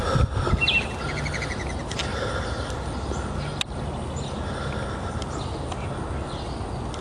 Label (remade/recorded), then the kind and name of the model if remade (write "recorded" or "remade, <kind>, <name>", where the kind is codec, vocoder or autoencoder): recorded